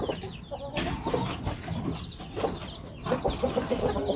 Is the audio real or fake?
real